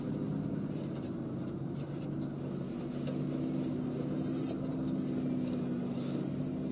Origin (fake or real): real